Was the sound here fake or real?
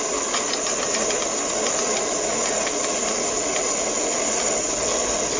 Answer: real